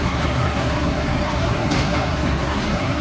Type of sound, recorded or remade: remade